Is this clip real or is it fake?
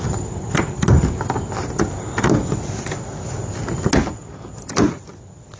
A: real